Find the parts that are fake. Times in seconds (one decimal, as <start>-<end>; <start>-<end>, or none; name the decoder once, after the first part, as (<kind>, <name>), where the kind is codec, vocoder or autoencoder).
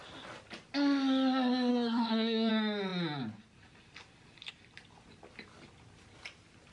1.7-2.5 (codec, SNAC)